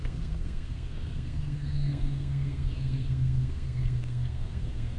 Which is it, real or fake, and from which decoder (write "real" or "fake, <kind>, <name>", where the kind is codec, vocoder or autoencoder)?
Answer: fake, codec, SNAC